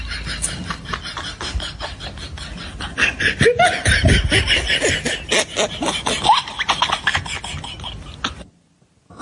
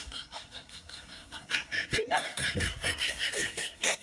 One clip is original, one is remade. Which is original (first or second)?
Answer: first